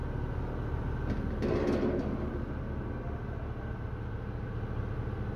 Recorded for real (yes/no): yes